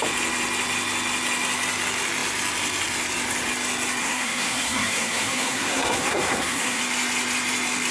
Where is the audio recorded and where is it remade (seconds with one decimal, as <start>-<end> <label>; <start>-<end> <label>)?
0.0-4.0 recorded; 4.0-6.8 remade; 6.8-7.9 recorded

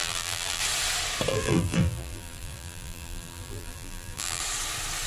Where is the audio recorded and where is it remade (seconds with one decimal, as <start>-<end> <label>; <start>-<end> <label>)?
0.0-0.6 remade; 0.6-1.3 recorded; 1.3-4.4 remade; 4.4-5.1 recorded

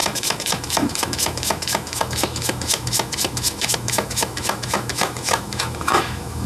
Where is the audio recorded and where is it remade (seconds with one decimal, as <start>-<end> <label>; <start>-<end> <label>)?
0.0-6.5 remade

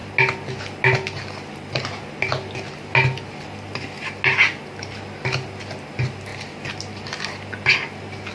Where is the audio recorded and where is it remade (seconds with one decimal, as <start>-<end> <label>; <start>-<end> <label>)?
0.0-8.3 recorded

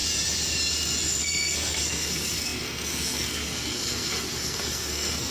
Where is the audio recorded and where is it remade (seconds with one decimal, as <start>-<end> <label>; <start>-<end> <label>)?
0.0-1.2 recorded; 1.2-5.3 remade

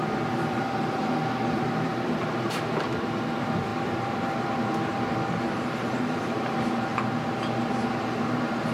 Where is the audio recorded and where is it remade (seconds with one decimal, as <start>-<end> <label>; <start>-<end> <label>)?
0.0-6.9 remade; 6.9-8.7 recorded